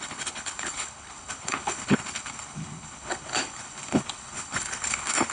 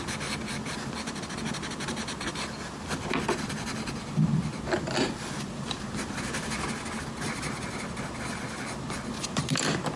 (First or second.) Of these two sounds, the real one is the second